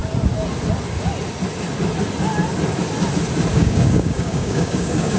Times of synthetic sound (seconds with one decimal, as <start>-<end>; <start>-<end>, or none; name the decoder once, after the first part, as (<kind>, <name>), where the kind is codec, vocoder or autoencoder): 3.5-5.2 (codec, DAC)